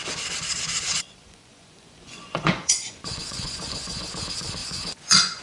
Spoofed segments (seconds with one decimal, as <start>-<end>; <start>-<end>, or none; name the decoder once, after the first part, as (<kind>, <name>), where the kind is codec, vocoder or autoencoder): 0.9-4.1 (vocoder, Vocos); 4.6-5.4